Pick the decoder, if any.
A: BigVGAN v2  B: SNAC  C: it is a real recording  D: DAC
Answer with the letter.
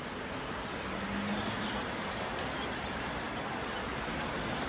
C